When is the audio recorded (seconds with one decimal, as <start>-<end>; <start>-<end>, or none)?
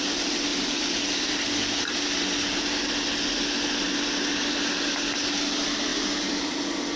0.0-0.5; 1.5-5.9; 6.6-7.0